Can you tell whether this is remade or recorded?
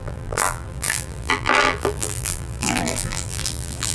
remade